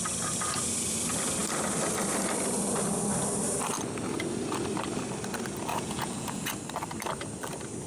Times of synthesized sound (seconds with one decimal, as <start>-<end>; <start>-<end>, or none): 5.7-6.5